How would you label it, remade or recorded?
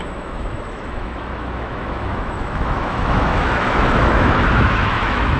remade